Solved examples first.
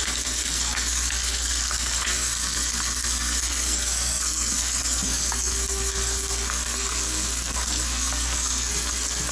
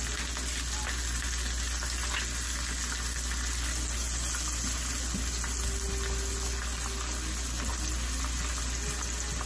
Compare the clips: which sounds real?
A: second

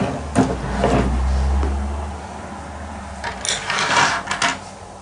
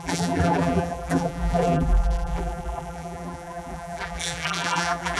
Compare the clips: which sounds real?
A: first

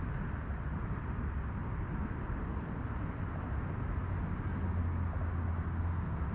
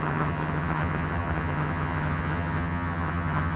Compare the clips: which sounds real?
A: first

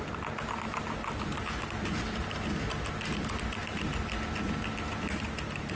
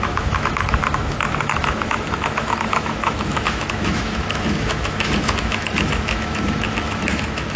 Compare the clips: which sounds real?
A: first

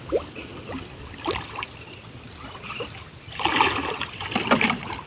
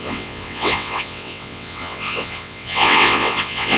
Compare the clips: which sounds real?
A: first